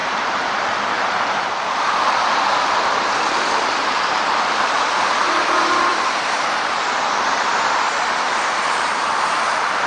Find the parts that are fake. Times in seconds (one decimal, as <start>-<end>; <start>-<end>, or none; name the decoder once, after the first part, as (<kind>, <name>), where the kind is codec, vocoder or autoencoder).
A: 0.0-7.5 (vocoder, BigVGAN v2); 8.6-9.9